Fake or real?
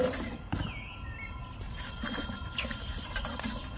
real